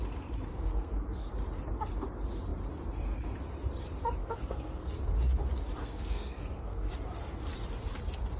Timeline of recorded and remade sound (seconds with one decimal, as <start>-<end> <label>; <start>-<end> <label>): 0.0-0.5 recorded; 0.5-1.3 remade; 1.3-4.2 recorded; 4.2-4.9 remade; 4.9-5.8 recorded; 5.8-6.9 remade; 6.9-8.4 recorded